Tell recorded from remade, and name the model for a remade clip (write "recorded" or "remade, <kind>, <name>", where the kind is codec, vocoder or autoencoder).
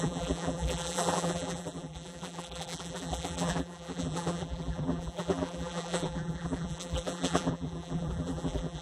remade, vocoder, BigVGAN v2